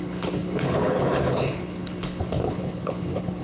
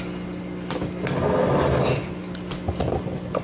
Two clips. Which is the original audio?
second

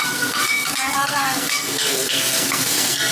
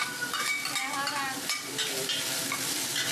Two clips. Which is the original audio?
second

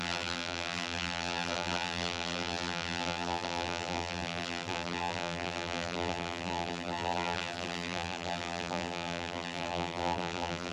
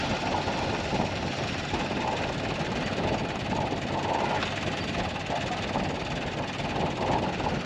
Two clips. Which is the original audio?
second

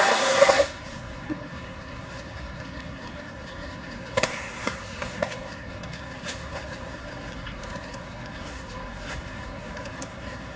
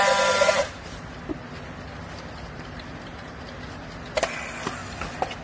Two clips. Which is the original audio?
second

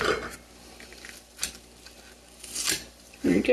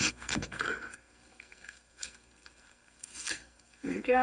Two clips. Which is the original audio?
first